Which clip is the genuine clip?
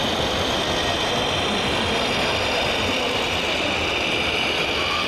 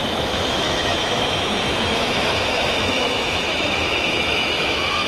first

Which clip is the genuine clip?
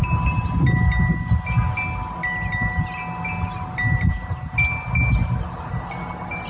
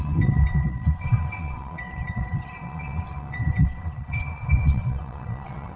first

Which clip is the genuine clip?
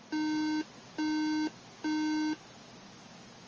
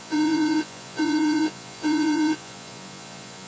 first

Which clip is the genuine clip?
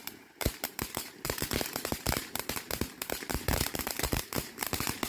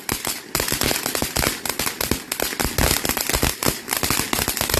second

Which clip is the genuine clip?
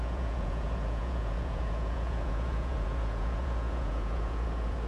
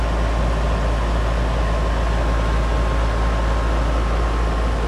second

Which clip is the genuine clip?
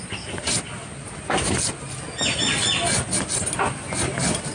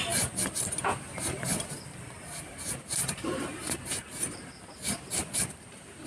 first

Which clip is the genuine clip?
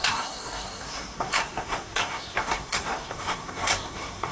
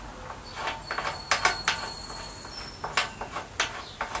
second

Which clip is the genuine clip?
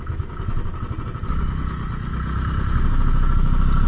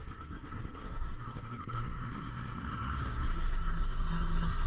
first